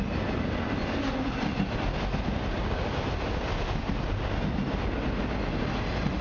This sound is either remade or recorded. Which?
recorded